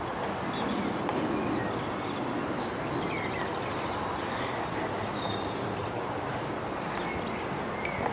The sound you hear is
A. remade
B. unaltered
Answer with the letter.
B